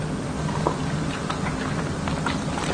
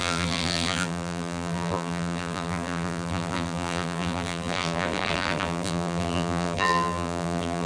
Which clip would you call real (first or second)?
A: first